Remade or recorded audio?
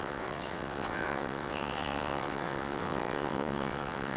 remade